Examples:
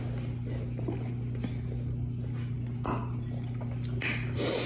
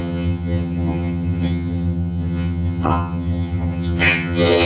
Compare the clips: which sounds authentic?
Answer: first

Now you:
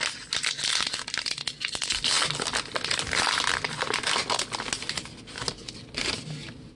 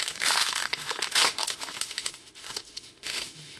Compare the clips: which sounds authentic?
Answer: first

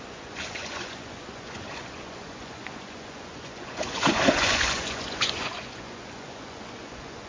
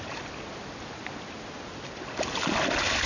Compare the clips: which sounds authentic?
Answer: second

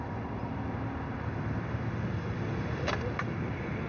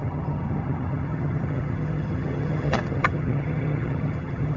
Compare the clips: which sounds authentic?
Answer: first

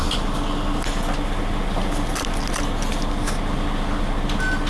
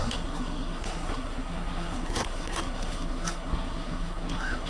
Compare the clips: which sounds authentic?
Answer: first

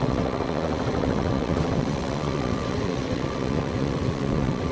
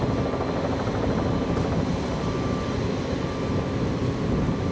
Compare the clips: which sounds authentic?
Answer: second